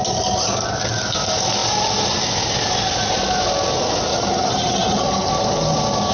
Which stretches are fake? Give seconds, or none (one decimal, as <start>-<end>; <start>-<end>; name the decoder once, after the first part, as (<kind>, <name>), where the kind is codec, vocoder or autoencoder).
4.1-5.3 (vocoder, HiFi-GAN)